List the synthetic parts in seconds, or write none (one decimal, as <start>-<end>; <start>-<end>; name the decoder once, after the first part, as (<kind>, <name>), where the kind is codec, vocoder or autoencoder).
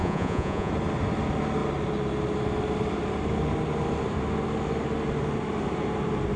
0.0-0.7 (vocoder, Vocos)